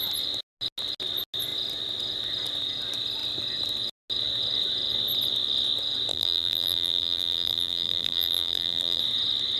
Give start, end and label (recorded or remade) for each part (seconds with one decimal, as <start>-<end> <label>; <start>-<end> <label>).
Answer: 0.0-6.1 recorded; 6.1-9.0 remade; 9.0-9.6 recorded